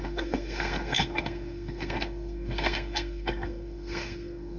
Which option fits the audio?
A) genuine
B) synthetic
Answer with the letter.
B